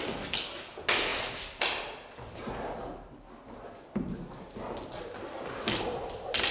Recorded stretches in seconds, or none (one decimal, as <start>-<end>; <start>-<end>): 0.0-6.5